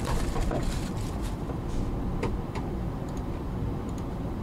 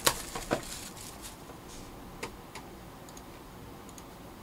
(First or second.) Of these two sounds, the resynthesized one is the first